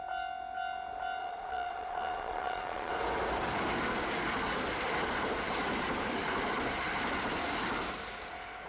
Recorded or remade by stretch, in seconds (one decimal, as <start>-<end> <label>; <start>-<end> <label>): 0.0-1.2 recorded; 1.2-2.9 remade; 2.9-8.7 recorded